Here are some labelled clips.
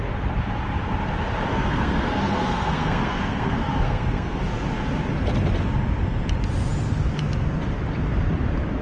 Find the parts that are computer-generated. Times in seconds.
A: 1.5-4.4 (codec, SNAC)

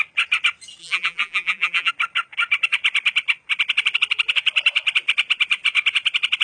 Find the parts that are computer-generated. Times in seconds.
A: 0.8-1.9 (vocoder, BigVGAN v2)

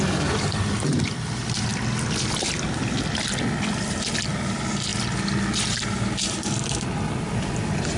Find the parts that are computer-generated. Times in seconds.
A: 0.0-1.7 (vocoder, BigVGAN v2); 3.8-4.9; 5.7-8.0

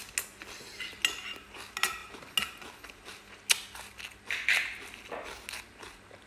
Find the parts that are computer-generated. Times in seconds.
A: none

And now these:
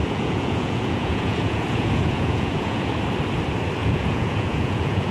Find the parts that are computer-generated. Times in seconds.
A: 0.0-2.9 (vocoder, Vocos); 3.8-5.1

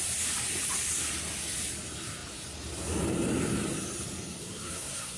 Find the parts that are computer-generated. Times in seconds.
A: 4.4-5.2 (codec, SNAC)

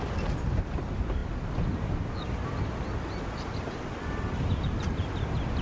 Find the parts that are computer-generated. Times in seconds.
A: none